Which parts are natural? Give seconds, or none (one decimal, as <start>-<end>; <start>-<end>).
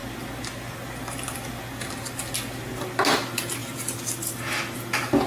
0.0-5.3